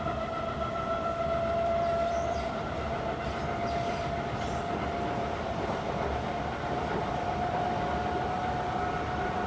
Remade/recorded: remade